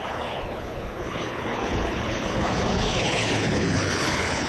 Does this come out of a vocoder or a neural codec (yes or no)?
yes